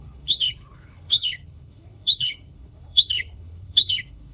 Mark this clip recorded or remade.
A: remade